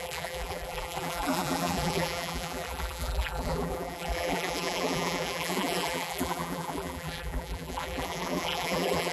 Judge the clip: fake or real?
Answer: fake